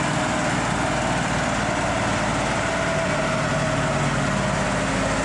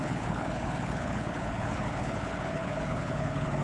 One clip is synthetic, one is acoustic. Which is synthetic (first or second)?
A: second